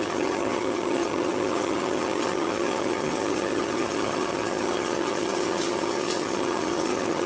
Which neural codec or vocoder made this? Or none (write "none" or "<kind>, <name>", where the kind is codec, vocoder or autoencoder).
vocoder, HiFi-GAN